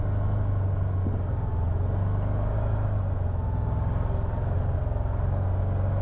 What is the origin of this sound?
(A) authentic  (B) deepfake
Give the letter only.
A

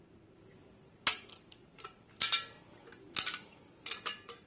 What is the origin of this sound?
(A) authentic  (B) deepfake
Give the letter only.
A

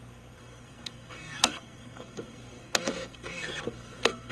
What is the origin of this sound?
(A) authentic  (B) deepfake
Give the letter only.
B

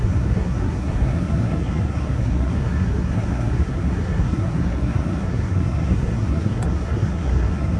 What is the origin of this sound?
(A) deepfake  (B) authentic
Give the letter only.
A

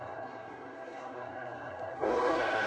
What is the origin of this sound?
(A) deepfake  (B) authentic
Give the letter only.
A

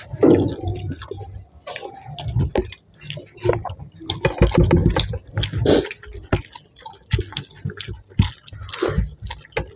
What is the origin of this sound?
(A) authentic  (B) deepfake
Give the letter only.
A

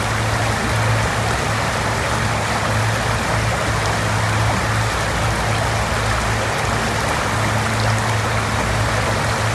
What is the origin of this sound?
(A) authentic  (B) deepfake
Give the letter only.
A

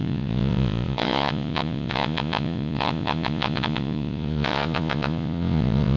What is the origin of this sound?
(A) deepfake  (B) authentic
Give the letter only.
A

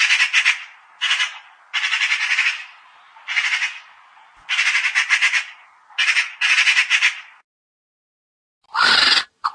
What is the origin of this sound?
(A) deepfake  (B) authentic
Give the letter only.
B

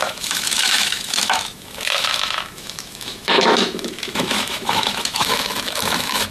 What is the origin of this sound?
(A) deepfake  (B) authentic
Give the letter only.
A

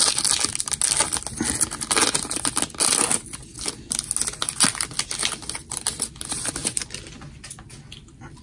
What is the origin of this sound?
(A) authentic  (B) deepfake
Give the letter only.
A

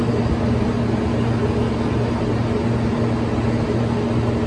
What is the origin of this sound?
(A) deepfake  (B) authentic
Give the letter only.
B